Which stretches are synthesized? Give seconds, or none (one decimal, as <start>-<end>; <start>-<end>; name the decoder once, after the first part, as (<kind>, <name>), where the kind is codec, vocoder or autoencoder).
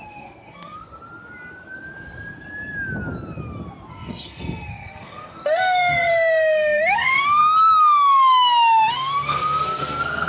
0.0-0.9 (codec, SNAC); 3.9-7.4; 8.9-10.3